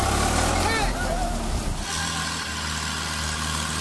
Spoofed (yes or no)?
no